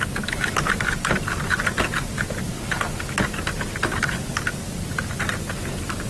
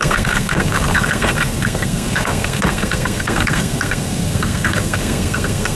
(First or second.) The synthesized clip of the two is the second